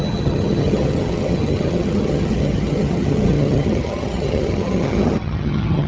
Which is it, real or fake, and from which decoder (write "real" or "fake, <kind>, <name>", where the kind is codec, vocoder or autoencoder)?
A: fake, vocoder, HiFi-GAN